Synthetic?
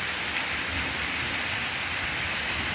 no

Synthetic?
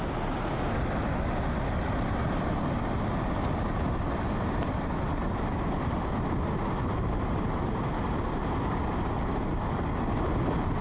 no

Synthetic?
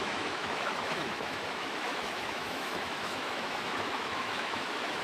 yes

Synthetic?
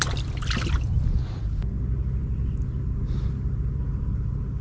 no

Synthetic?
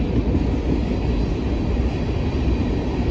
no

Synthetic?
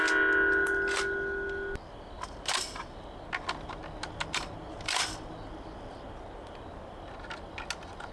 no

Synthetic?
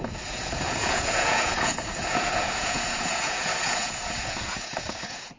yes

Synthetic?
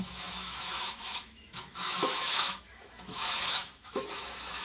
yes